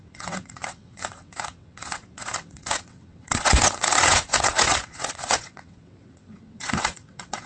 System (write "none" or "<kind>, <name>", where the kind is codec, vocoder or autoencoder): vocoder, WaveNeXt